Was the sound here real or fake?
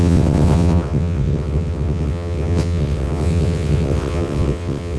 fake